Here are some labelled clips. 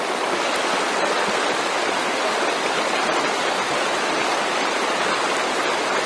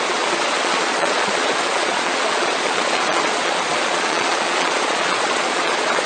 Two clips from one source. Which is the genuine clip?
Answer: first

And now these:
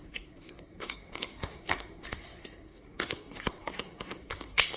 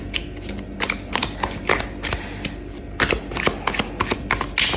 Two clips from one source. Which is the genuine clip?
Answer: second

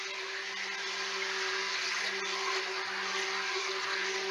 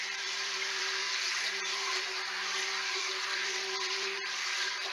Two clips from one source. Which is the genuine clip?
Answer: first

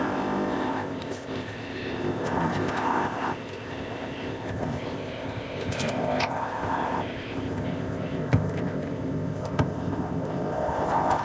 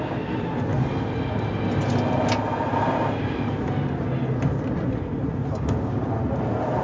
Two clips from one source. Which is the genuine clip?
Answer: second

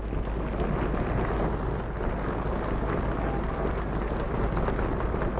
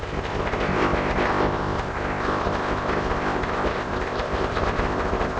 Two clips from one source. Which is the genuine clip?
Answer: first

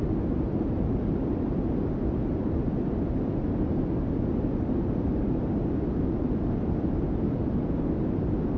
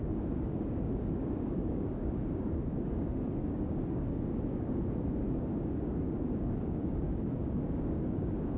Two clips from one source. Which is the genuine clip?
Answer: first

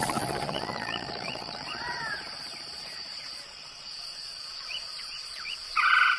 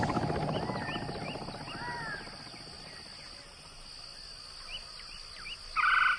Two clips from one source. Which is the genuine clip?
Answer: second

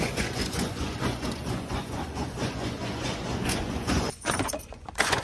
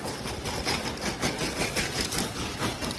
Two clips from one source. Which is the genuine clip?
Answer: second